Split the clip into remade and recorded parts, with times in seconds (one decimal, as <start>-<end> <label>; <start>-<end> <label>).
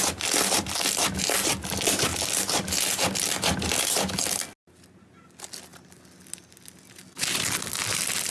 0.0-8.3 recorded